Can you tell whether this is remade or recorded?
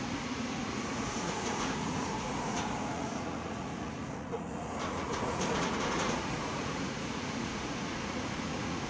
remade